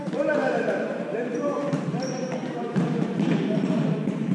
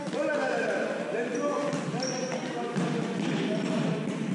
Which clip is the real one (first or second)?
second